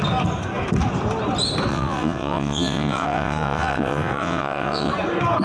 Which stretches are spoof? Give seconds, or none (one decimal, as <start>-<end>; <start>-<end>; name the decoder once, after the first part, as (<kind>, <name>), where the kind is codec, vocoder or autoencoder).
1.7-4.9 (vocoder, WaveNeXt)